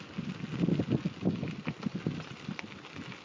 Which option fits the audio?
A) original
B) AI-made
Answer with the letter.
A